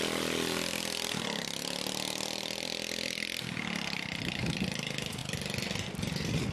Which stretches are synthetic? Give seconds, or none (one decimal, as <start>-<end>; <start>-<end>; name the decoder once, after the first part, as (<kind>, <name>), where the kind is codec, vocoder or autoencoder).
none